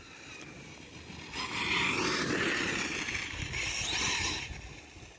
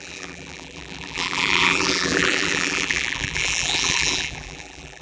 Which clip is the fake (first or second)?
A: second